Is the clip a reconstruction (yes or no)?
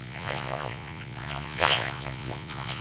yes